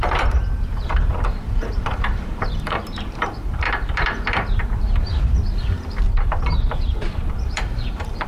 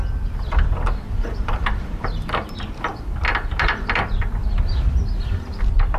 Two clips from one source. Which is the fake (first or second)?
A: first